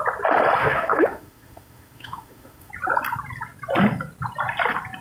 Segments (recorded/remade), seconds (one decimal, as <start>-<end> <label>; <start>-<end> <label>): 0.0-0.6 recorded; 0.6-2.7 remade; 2.7-5.0 recorded